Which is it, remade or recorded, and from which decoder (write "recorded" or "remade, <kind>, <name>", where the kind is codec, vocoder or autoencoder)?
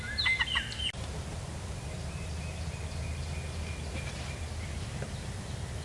recorded